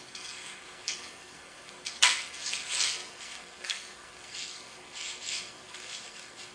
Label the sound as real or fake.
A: fake